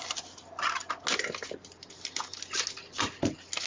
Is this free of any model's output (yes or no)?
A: yes